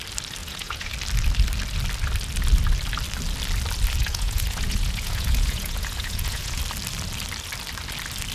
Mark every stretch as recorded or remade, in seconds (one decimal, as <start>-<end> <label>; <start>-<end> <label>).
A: 0.0-0.4 recorded; 0.4-0.9 remade; 0.9-4.0 recorded; 4.0-6.6 remade; 6.6-8.3 recorded